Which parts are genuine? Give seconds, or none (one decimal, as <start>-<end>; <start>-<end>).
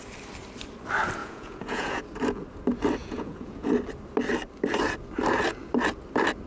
0.0-1.2; 2.0-3.0; 3.7-6.5